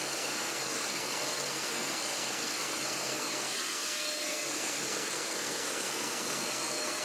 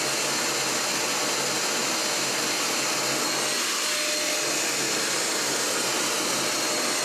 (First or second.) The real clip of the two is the second